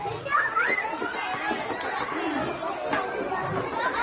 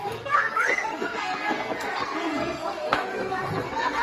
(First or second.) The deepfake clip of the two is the second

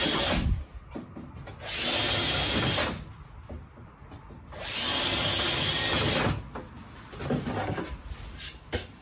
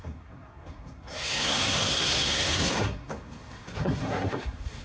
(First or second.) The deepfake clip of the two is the second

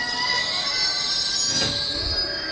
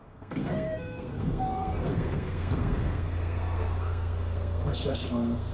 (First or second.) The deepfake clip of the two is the second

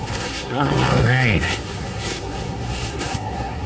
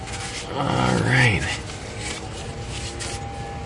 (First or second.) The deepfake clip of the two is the first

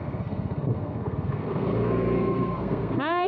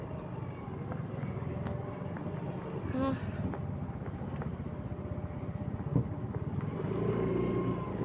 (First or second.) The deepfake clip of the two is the first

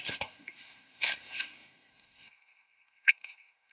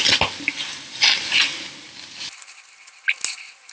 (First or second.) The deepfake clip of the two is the first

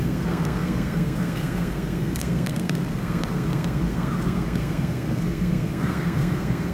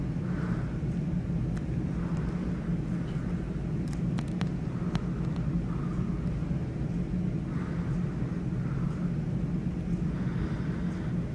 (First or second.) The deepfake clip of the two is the first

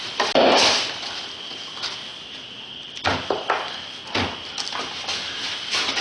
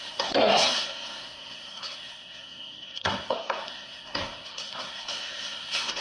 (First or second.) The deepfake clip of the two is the second